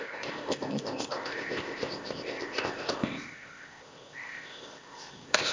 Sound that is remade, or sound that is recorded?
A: remade